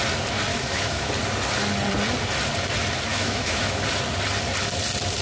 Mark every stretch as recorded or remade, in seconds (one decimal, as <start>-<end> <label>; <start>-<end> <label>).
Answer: 0.0-0.5 recorded; 0.5-1.1 remade; 1.1-3.1 recorded; 3.1-3.8 remade; 3.8-5.2 recorded